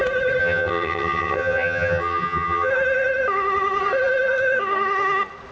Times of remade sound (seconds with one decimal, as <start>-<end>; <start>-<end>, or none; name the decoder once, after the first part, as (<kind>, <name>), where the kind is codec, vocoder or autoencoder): 0.4-2.7 (vocoder, HiFi-GAN)